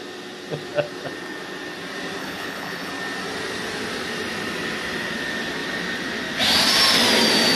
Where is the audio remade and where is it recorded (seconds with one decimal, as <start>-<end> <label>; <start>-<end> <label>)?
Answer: 0.0-2.2 recorded; 2.2-2.9 remade; 2.9-7.6 recorded